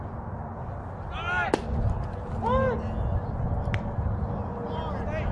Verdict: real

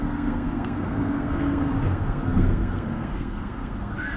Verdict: fake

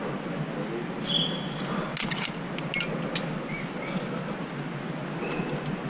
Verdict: real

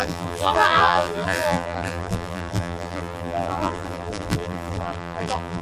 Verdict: fake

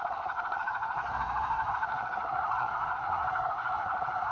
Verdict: fake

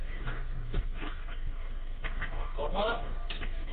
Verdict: fake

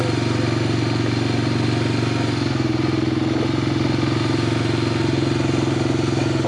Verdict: real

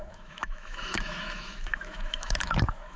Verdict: fake